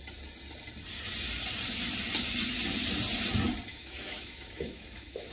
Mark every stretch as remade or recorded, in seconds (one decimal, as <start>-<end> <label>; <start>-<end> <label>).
0.0-3.7 recorded; 3.7-5.3 remade